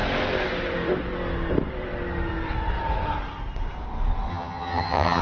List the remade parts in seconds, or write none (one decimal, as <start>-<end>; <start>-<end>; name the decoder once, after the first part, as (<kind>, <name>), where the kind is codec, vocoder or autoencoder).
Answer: 4.3-5.2 (vocoder, HiFi-GAN)

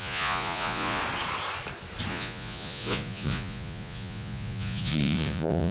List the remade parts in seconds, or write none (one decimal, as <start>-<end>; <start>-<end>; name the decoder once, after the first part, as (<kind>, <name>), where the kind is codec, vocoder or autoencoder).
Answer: 0.0-1.0 (vocoder, Vocos); 2.1-5.7

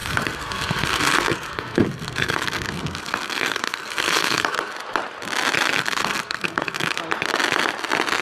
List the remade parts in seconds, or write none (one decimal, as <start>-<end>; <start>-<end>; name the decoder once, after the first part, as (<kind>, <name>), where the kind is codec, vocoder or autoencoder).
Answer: 0.0-4.7 (codec, SNAC); 5.8-7.0